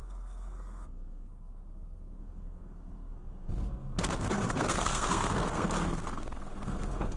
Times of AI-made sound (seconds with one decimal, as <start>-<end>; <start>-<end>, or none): 0.0-7.2